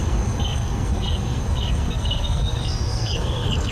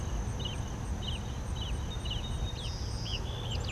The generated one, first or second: first